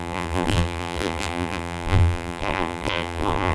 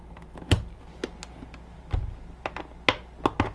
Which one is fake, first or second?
first